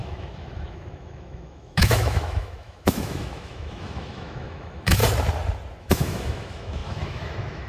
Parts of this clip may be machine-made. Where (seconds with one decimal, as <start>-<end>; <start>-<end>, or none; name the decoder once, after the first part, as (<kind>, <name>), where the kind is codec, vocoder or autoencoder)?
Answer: 0.0-5.0 (autoencoder, DAC-VAE); 5.8-7.7